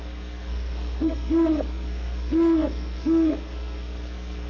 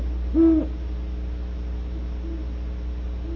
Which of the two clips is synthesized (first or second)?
first